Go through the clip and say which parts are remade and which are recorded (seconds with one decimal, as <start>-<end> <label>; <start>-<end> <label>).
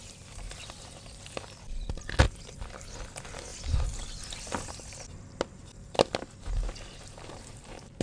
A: 0.0-0.6 recorded; 0.6-2.2 remade; 2.2-3.5 recorded; 3.5-4.7 remade; 4.7-8.0 recorded